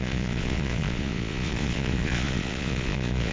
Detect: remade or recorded remade